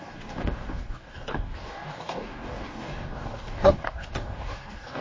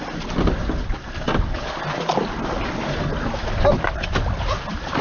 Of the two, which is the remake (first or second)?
first